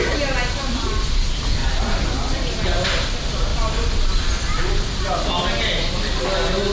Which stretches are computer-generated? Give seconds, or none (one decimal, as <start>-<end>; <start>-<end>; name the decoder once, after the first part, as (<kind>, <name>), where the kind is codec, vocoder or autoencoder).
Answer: none